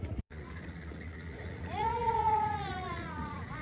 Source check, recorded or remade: remade